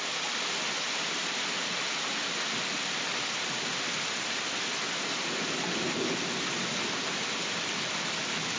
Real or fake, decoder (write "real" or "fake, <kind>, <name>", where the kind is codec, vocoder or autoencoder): real